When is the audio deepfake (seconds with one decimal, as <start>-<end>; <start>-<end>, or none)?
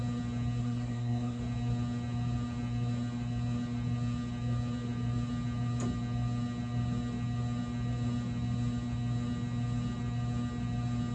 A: 0.6-1.4